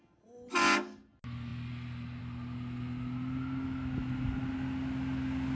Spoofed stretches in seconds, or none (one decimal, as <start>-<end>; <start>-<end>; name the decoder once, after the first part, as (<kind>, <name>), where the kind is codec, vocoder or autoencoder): none